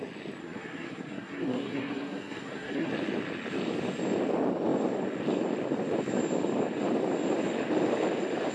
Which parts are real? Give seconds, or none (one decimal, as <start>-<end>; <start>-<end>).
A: 0.0-0.4; 2.9-8.5